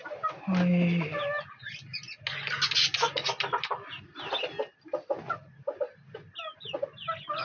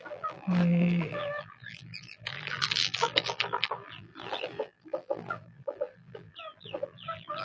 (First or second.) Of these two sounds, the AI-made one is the second